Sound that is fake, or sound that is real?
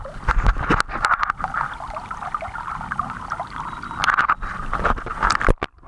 real